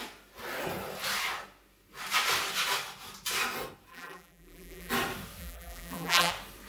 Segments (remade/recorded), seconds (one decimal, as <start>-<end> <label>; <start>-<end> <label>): 0.0-3.9 recorded; 3.9-4.9 remade; 4.9-5.4 recorded; 5.4-6.3 remade; 6.3-6.7 recorded